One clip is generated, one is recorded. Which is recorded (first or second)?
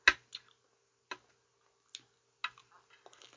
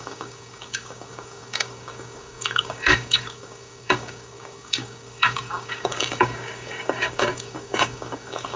first